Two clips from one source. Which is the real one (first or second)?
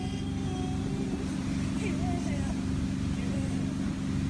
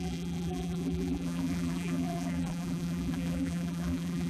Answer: first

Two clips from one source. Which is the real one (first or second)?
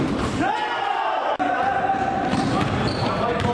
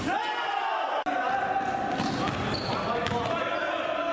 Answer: second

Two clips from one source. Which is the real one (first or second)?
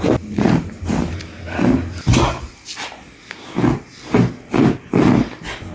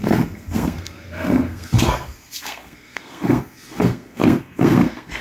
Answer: first